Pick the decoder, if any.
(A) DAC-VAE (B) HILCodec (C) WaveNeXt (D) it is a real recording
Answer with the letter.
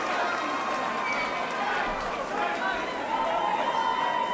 D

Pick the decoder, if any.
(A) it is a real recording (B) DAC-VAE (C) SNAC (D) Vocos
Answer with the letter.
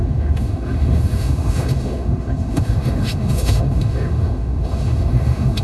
B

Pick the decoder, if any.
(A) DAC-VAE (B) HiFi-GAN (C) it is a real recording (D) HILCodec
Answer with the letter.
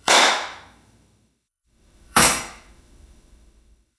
A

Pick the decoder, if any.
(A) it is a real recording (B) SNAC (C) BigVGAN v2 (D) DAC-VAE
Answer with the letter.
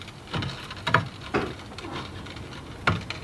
A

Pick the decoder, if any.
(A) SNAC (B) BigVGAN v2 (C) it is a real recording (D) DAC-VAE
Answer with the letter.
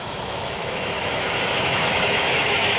D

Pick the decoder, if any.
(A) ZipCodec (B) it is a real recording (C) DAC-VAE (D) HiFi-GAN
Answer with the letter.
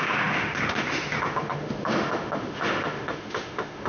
C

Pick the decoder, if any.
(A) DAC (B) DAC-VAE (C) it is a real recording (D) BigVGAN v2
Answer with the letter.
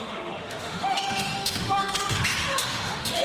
B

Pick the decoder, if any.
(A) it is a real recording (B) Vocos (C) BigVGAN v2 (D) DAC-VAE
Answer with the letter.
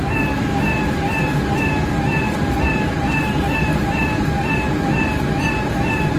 A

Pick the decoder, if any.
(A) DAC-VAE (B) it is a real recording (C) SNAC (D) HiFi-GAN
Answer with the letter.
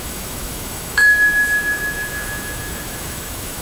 A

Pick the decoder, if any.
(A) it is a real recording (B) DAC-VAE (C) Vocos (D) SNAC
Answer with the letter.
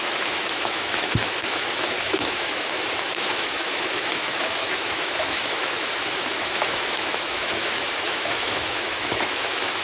B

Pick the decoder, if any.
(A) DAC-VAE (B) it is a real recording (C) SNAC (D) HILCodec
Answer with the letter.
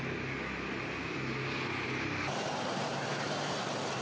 B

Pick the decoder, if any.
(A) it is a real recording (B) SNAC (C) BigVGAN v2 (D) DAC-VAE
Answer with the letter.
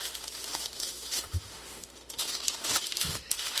D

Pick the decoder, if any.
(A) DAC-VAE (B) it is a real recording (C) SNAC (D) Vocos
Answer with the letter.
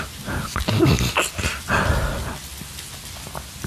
B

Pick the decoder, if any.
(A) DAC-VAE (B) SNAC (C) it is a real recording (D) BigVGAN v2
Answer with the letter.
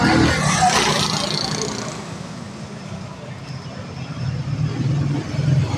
C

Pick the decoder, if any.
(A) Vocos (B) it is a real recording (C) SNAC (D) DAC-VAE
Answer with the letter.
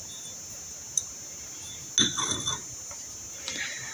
B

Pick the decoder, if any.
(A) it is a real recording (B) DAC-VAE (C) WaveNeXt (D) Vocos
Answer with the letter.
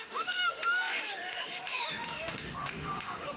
B